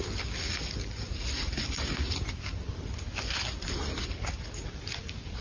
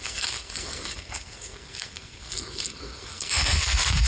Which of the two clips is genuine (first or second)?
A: first